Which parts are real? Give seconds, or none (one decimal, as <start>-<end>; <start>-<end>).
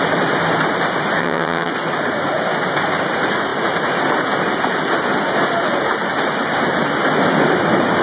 0.0-1.2; 1.7-8.0